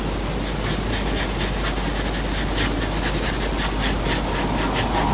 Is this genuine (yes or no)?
yes